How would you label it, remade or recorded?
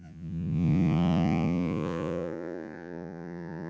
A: remade